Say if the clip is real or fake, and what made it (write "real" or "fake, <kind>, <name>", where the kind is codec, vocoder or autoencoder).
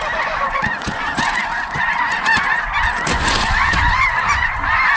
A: fake, vocoder, Vocos